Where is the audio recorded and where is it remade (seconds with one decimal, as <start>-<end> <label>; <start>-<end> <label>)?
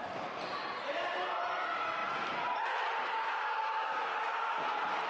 0.0-3.0 recorded; 3.0-4.0 remade; 4.0-5.1 recorded